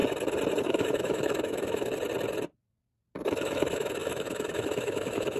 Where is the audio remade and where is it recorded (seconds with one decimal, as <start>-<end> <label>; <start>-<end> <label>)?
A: 0.0-0.6 recorded; 0.6-1.9 remade; 1.9-3.4 recorded; 3.4-5.4 remade

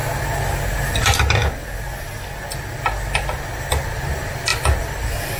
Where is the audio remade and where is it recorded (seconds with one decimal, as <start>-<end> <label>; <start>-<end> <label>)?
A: 0.0-5.4 recorded

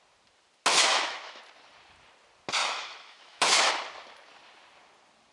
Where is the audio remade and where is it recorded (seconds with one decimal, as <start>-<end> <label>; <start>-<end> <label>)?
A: 0.0-0.7 recorded; 0.7-1.4 remade; 1.4-2.6 recorded; 2.6-3.7 remade; 3.7-5.3 recorded

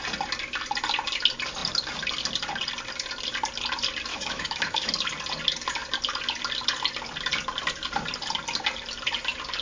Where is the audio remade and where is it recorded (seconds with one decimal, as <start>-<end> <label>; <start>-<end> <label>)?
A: 0.0-4.1 recorded; 4.1-4.9 remade; 4.9-9.6 recorded

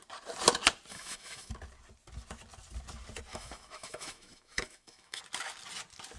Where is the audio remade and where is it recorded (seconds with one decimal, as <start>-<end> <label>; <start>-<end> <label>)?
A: 0.0-0.9 recorded; 0.9-1.5 remade; 1.5-3.3 recorded; 3.3-5.2 remade; 5.2-6.2 recorded

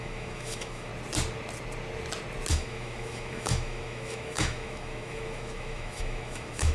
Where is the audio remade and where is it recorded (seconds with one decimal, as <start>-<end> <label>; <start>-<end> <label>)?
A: 0.0-0.9 remade; 0.9-2.5 recorded; 2.5-6.7 remade

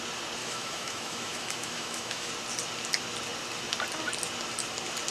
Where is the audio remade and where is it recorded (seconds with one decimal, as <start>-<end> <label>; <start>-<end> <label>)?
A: 0.0-0.4 recorded; 0.4-2.3 remade; 2.3-5.1 recorded

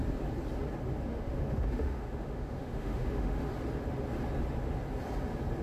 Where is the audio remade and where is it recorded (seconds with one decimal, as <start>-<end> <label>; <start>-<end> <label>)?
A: 0.0-1.1 recorded; 1.1-3.5 remade; 3.5-5.6 recorded